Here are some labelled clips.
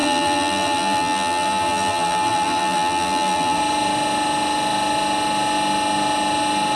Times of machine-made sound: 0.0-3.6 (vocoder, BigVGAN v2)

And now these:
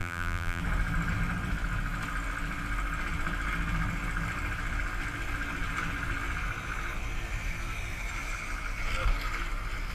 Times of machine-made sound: 0.0-0.6 (vocoder, BigVGAN v2)

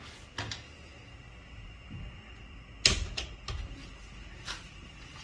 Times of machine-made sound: none

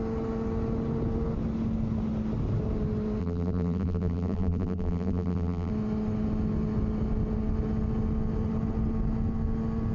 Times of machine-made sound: 3.2-5.7 (vocoder, BigVGAN v2)

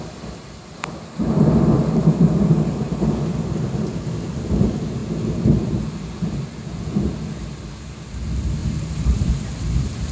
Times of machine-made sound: 8.6-9.3 (vocoder, BigVGAN v2)

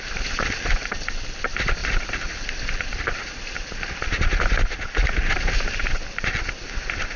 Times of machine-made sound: none

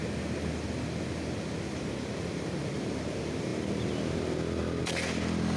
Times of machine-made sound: none

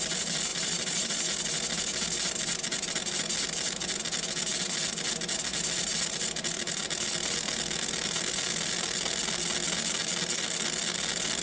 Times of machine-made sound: 0.5-1.3 (vocoder, BigVGAN v2)